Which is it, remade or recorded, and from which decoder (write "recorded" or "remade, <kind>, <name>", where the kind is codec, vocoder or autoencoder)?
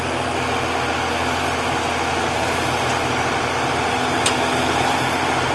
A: recorded